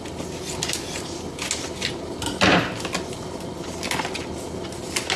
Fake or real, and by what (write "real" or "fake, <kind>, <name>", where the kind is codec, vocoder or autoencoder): real